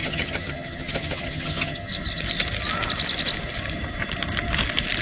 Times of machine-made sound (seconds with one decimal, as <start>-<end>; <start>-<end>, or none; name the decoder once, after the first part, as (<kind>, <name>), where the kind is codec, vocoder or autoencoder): 0.0-1.9 (vocoder, HiFi-GAN)